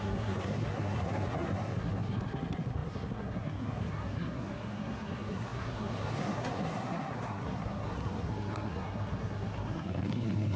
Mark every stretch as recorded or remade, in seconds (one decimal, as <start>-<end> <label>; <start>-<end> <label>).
0.0-10.6 remade